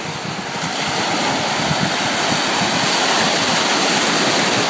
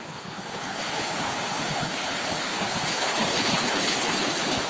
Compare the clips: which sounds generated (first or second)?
second